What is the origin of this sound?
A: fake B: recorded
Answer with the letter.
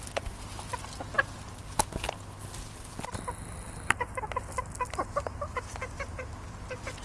B